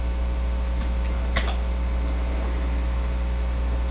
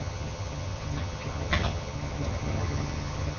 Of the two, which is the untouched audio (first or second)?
first